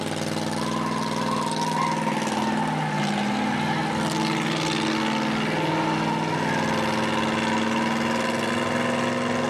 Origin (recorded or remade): recorded